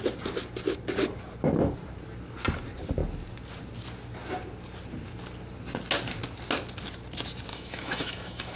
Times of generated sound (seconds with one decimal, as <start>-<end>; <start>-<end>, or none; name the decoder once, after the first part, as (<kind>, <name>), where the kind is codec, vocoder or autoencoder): 7.5-8.6 (autoencoder, DAC-VAE)